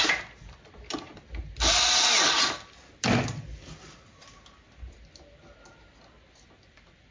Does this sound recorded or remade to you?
recorded